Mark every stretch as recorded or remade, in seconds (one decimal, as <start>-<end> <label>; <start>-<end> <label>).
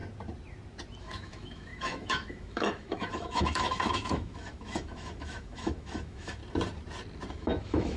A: 0.0-1.0 recorded; 1.0-6.4 remade; 6.4-7.3 recorded; 7.3-8.0 remade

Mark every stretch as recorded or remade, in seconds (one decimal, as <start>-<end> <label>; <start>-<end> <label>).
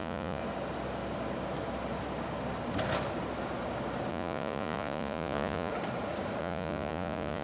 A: 0.0-0.4 remade; 0.4-4.1 recorded; 4.1-5.7 remade; 5.7-6.4 recorded; 6.4-7.4 remade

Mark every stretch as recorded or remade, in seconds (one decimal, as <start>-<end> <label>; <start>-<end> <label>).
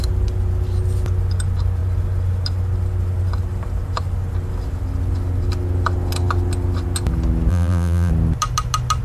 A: 0.0-7.5 recorded; 7.5-8.1 remade; 8.1-9.0 recorded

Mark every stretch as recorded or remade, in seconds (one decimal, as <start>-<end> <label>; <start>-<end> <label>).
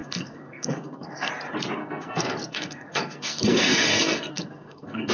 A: 0.0-1.3 remade; 1.3-1.8 recorded; 1.8-5.1 remade